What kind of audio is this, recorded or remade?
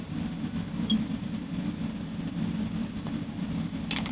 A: recorded